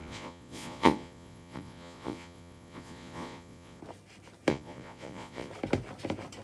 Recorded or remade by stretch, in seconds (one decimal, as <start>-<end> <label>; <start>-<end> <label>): 0.0-3.8 remade; 3.8-4.5 recorded; 4.5-5.5 remade; 5.5-6.4 recorded